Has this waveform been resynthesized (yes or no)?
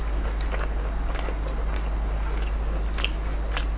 no